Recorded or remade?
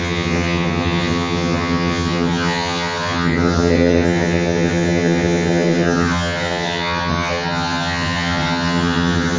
remade